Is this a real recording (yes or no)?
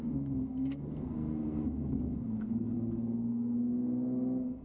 no